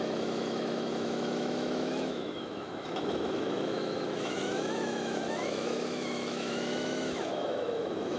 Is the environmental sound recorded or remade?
remade